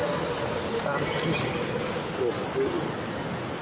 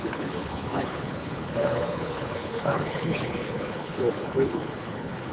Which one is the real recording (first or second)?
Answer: first